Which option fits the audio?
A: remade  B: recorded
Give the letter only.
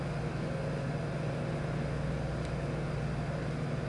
B